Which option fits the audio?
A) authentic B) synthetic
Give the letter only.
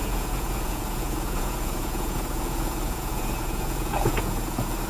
B